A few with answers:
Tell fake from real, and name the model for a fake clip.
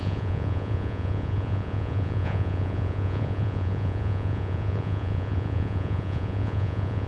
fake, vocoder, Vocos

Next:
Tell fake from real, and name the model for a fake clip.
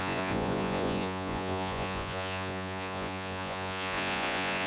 fake, vocoder, Vocos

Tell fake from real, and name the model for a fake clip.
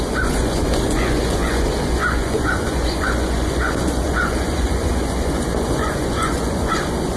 fake, vocoder, Vocos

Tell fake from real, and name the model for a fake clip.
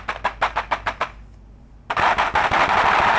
real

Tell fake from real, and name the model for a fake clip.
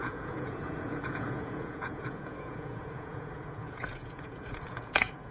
fake, vocoder, Vocos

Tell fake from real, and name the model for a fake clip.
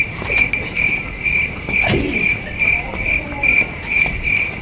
real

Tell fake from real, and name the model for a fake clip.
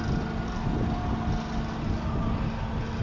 real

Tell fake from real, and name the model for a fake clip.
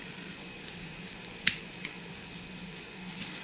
fake, vocoder, Vocos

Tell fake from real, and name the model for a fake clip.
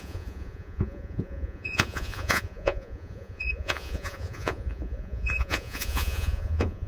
fake, vocoder, Vocos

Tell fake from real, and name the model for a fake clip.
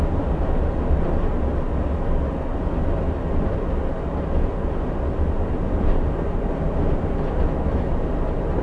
real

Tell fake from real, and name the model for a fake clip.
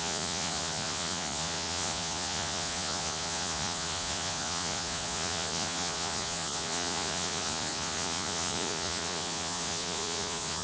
fake, vocoder, Vocos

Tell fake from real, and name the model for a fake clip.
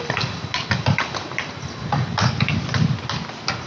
real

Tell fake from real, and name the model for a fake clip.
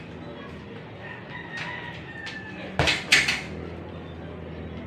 real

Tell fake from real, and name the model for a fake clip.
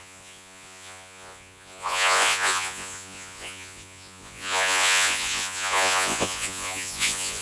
fake, vocoder, Vocos